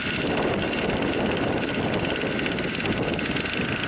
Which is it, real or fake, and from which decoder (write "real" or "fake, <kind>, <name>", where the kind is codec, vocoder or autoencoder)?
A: real